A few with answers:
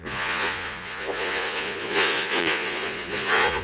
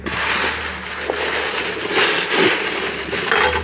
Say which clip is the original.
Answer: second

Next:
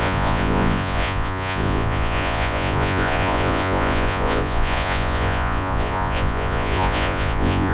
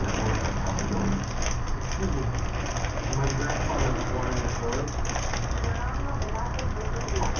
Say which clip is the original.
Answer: second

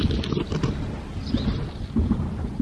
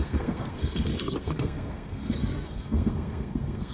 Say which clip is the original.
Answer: first